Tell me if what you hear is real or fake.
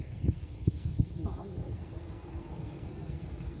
fake